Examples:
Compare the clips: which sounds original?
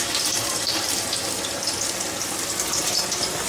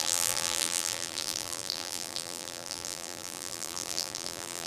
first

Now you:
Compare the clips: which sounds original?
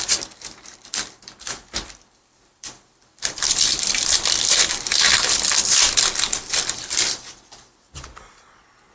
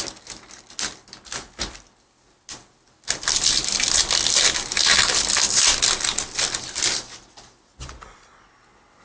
second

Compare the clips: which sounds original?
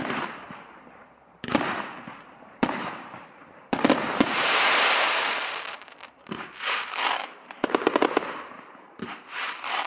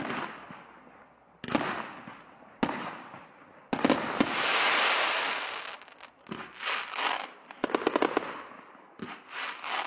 second